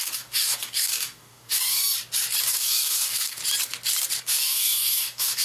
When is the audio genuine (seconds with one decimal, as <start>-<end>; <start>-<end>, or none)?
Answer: 1.8-2.4; 3.4-4.2